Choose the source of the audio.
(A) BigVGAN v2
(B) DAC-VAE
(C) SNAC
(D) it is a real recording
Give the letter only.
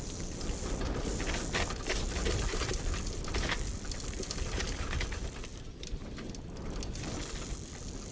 D